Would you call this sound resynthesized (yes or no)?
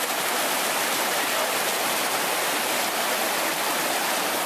no